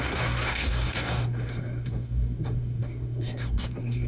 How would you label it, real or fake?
fake